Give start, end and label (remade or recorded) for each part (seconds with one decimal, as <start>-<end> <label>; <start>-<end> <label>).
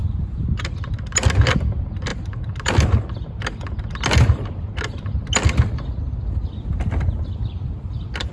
0.0-0.7 remade; 0.7-8.3 recorded